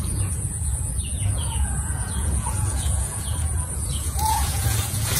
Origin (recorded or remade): remade